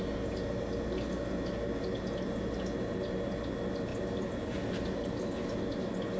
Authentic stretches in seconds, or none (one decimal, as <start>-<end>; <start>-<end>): 0.0-6.2